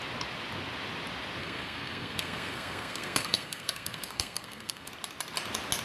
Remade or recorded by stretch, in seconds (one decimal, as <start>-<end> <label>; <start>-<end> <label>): 0.0-1.4 recorded; 1.4-4.9 remade; 4.9-5.8 recorded